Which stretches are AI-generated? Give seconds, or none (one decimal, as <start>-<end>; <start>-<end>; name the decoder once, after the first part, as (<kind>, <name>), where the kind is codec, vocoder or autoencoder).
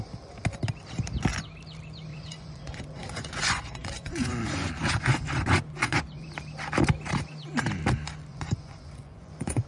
2.1-6.3 (vocoder, Vocos); 8.3-9.7